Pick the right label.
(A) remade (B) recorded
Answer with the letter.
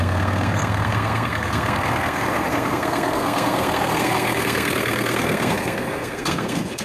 A